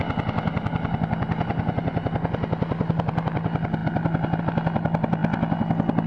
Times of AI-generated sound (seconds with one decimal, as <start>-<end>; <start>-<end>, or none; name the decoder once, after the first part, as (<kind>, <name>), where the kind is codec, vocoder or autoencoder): none